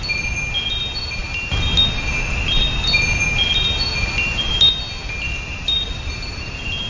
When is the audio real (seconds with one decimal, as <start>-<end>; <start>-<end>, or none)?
0.0-6.9